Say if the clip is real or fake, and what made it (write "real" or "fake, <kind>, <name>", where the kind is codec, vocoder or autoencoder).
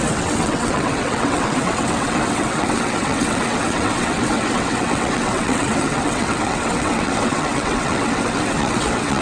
fake, vocoder, WaveNeXt